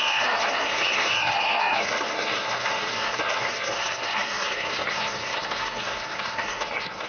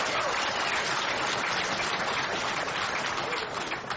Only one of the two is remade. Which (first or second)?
first